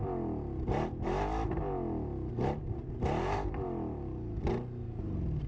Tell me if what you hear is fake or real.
real